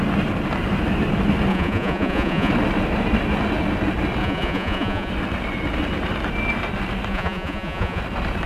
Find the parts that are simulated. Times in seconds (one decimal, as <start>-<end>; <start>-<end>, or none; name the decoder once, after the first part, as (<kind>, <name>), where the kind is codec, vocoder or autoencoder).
1.5-2.5 (vocoder, Vocos); 4.2-5.1; 7.1-8.0